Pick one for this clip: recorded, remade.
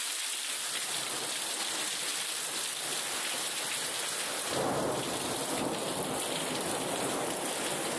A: recorded